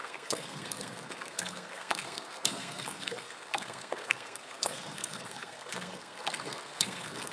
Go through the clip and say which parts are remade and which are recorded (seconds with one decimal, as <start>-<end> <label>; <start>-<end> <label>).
0.0-7.3 remade